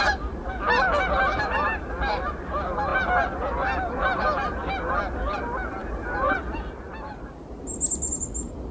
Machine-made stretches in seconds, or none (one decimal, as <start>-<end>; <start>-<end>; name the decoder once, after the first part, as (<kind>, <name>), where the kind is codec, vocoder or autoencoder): none